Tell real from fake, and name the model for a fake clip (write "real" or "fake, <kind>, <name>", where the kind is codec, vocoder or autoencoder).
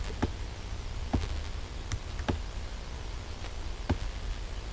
real